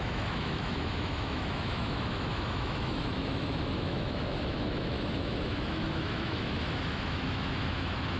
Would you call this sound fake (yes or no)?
yes